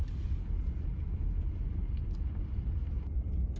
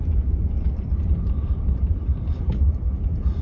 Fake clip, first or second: second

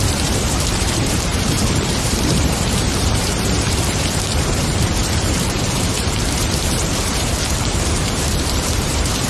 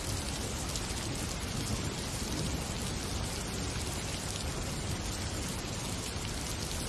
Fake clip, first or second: first